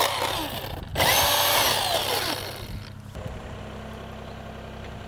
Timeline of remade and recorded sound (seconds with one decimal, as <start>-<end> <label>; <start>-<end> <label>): 0.0-5.1 recorded

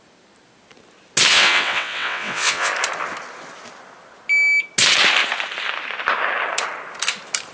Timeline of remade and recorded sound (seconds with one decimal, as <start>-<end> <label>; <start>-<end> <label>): 0.0-1.3 recorded; 1.3-2.7 remade; 2.7-7.5 recorded

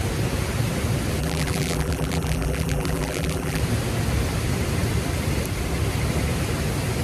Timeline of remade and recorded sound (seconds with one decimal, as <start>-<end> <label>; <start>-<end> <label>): 0.0-1.2 recorded; 1.2-3.6 remade; 3.6-7.0 recorded

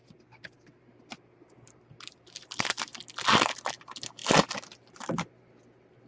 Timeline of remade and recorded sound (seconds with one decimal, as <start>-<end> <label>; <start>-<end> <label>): 0.0-6.1 recorded